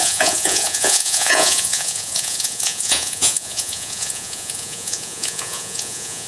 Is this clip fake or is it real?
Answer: fake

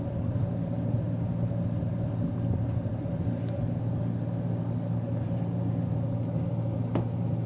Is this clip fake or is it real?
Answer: real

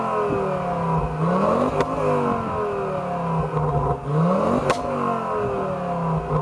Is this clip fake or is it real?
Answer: real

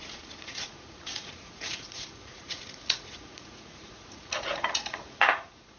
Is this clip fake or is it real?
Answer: fake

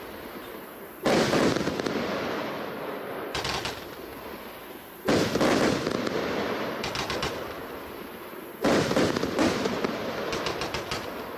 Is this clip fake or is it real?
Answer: real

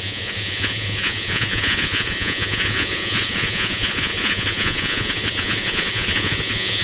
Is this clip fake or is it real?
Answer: fake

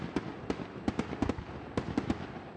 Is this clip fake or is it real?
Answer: real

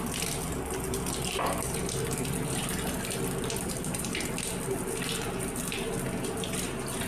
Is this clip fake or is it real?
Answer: real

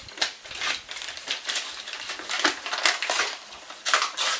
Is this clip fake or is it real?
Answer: real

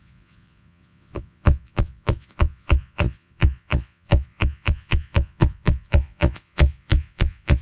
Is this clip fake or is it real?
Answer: fake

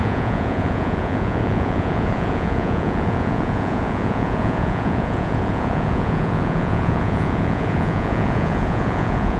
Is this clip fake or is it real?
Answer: fake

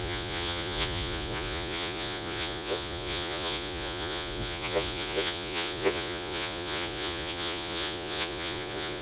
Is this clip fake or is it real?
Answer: fake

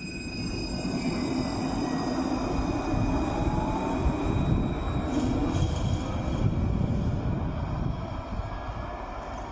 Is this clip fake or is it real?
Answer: real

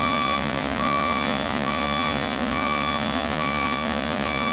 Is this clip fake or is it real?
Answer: fake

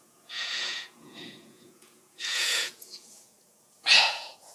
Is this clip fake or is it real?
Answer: fake